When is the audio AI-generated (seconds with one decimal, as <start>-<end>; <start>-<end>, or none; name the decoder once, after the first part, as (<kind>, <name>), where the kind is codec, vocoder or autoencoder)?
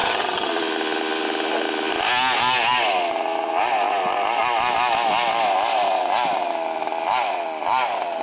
0.0-0.5 (vocoder, HiFi-GAN)